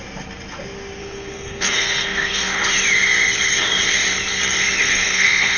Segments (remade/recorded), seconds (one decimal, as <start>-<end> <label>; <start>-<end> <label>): 0.0-1.0 recorded; 1.0-2.6 remade; 2.6-4.8 recorded; 4.8-5.6 remade